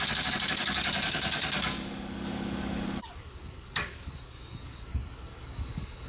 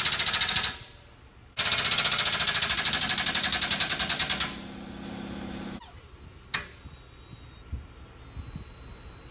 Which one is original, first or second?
second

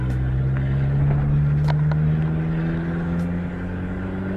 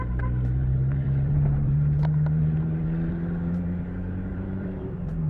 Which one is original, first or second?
first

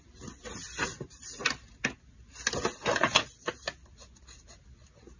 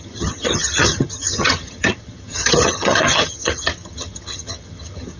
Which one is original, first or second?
first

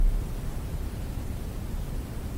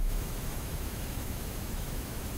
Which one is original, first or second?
first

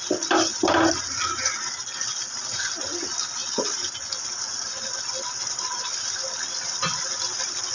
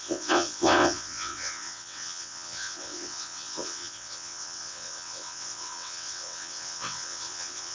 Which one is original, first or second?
first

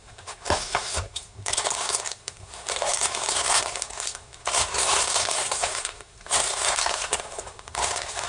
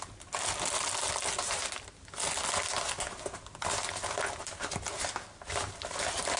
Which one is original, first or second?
second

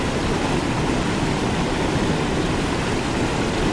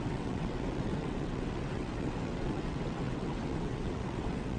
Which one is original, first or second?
first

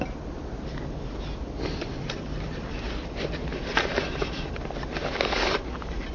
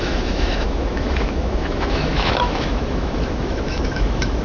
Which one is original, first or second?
first